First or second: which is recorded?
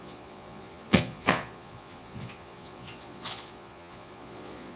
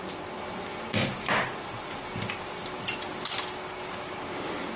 second